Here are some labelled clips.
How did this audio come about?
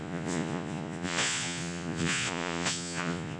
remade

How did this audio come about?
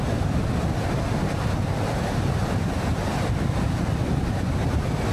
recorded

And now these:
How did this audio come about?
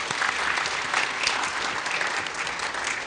recorded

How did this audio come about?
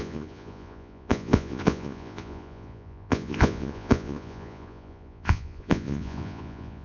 remade